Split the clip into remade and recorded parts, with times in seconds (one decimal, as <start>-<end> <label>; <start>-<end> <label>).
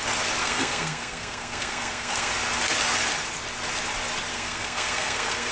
0.0-0.4 recorded; 0.4-2.3 remade; 2.3-4.3 recorded; 4.3-5.5 remade